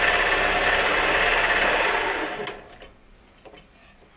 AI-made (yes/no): no